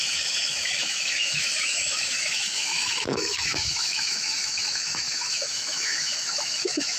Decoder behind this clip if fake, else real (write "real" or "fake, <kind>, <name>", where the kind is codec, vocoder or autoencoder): fake, autoencoder, DAC-VAE